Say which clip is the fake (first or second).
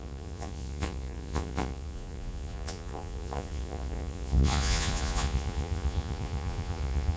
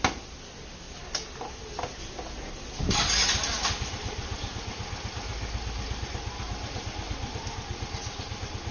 first